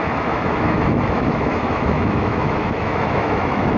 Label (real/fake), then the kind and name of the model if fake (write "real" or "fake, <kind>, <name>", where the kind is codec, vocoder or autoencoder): fake, autoencoder, DAC-VAE